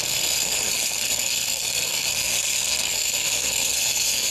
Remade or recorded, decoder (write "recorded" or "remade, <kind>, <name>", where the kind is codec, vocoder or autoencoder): remade, codec, SNAC